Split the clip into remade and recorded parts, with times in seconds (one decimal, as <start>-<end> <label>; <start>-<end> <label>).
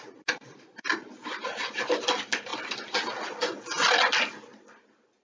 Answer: 0.0-5.2 recorded